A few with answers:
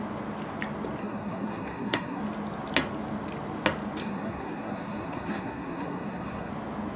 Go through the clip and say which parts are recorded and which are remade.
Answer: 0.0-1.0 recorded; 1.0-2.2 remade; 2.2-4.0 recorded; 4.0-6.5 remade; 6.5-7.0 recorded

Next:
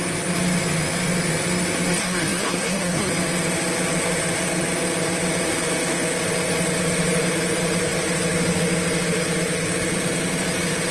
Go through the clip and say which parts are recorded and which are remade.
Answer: 0.0-1.9 recorded; 1.9-3.1 remade; 3.1-10.9 recorded

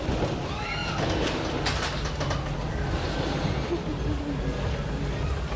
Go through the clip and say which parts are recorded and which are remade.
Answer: 0.0-5.6 recorded